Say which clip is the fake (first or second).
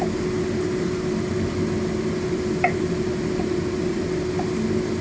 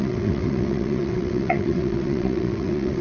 second